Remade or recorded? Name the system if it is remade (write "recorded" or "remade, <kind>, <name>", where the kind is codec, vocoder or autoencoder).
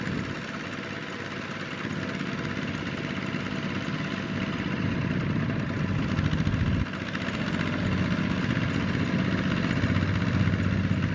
recorded